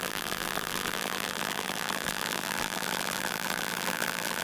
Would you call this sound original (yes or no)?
no